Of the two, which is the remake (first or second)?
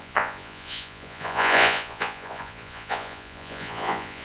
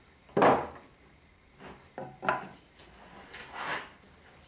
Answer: first